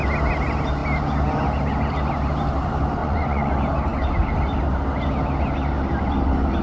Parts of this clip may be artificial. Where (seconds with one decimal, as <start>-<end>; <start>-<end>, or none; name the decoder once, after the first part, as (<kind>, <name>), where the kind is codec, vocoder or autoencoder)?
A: 3.0-3.5 (vocoder, Vocos)